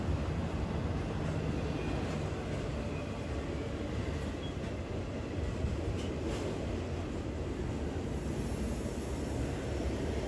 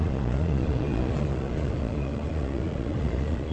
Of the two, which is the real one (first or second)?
first